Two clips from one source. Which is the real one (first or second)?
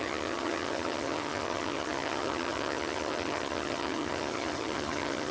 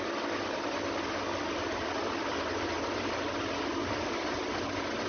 second